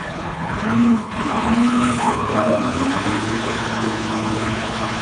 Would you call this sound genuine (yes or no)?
no